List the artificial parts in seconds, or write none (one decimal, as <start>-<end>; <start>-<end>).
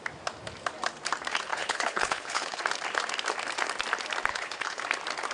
1.5-2.6; 4.3-4.8